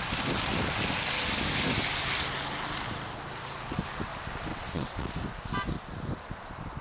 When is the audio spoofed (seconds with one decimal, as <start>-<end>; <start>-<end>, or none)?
4.5-5.1